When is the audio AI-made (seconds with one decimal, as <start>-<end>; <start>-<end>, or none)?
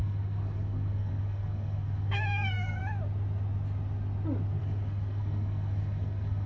0.0-2.8; 4.6-6.5